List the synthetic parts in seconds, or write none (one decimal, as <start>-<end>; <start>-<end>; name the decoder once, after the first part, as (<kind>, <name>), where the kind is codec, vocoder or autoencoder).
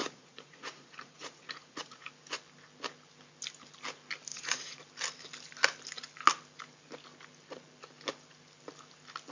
0.0-2.1 (vocoder, Vocos); 4.3-4.8